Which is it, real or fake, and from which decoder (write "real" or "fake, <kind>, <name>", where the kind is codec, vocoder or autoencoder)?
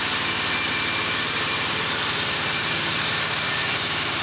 fake, vocoder, BigVGAN v2